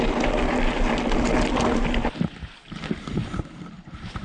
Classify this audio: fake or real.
real